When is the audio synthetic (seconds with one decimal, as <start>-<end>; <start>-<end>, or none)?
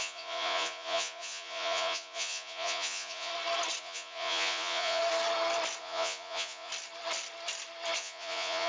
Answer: 0.0-3.3; 3.8-5.0; 5.8-6.7; 8.0-8.7